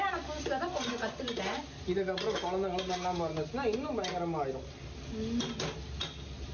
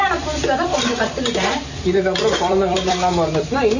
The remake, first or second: second